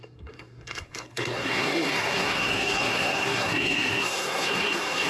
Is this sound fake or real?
fake